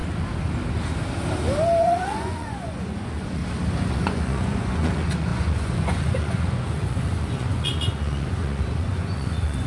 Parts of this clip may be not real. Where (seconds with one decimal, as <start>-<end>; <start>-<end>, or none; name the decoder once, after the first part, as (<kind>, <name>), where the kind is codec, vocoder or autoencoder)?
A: 1.8-3.4 (vocoder, Vocos); 3.9-9.7